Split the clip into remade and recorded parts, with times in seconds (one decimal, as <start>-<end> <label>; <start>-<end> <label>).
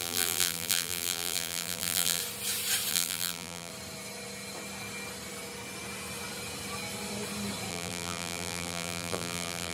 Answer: 0.0-2.2 remade; 2.2-2.9 recorded; 2.9-3.7 remade; 3.7-7.7 recorded; 7.7-9.7 remade